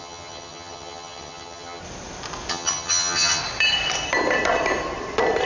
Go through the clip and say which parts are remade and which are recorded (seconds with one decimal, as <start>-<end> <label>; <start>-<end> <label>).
0.0-1.8 remade; 1.8-2.5 recorded; 2.5-3.4 remade; 3.4-5.5 recorded